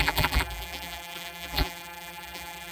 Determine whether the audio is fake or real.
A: fake